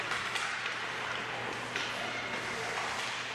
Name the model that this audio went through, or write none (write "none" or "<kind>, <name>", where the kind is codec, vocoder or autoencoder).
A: none